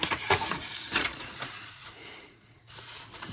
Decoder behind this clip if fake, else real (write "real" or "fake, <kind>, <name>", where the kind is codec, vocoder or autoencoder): fake, vocoder, Vocos